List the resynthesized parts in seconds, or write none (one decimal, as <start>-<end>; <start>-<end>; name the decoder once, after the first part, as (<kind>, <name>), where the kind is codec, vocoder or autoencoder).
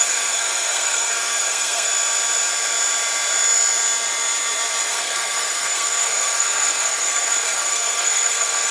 0.0-1.9 (codec, SNAC); 4.9-8.7